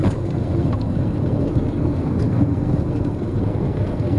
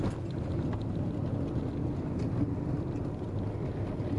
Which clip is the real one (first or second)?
second